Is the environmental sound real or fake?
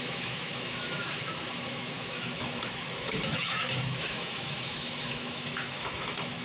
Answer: fake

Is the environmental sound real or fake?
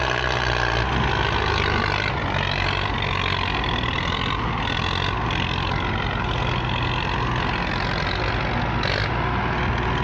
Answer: real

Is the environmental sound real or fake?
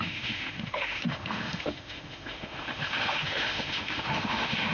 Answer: fake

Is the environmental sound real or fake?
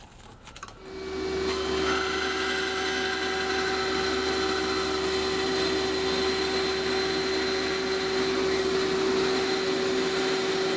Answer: real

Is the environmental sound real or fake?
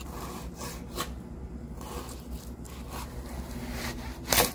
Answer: real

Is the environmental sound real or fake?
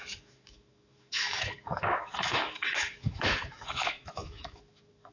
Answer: fake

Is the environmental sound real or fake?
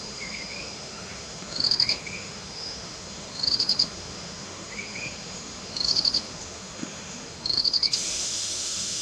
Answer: fake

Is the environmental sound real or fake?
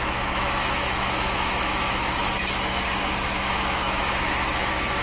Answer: fake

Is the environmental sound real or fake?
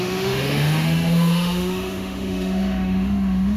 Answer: fake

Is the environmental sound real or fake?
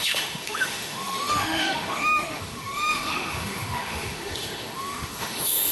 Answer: fake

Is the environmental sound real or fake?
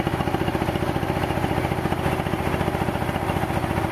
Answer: real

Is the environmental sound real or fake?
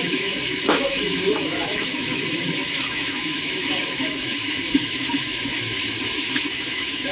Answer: fake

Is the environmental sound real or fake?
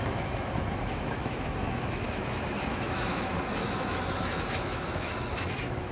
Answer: fake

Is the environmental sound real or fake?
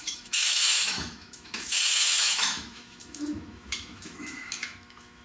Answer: fake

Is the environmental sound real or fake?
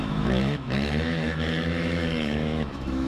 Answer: fake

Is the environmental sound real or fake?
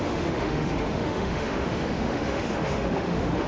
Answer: fake